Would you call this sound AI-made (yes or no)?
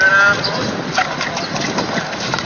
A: no